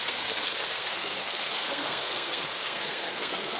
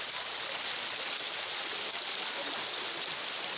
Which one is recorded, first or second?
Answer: second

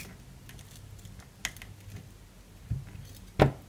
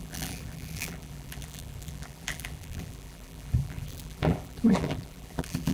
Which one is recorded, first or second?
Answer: first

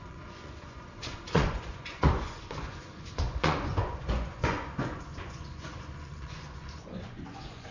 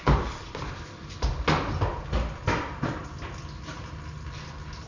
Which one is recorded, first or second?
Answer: second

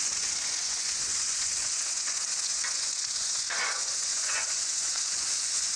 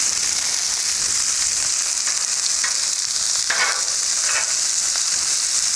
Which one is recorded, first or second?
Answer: second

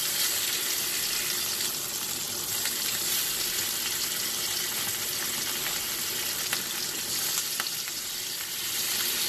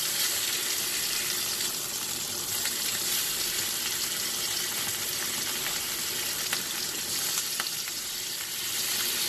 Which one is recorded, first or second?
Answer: first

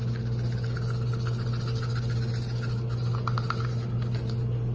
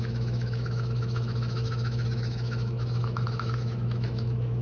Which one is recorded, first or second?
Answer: first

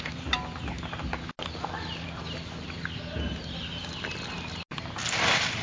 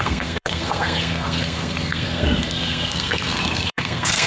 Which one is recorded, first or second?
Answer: first